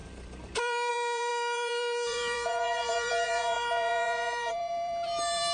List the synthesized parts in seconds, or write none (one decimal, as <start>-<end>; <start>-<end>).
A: 0.0-5.5